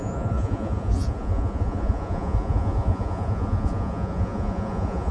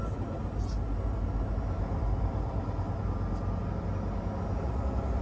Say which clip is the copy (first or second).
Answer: first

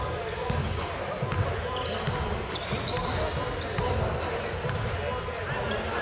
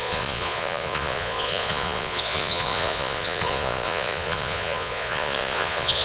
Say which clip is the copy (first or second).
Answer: second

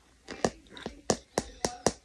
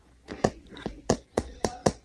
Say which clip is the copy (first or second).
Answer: second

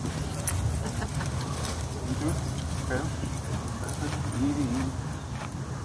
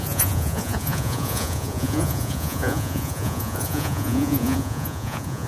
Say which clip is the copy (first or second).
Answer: second